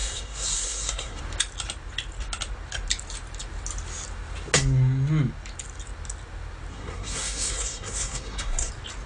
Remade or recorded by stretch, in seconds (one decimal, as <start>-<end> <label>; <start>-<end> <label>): 0.0-1.2 remade; 1.2-6.7 recorded; 6.7-8.7 remade; 8.7-9.1 recorded